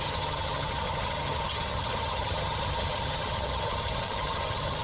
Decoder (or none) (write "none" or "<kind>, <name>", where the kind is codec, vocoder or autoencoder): vocoder, HiFi-GAN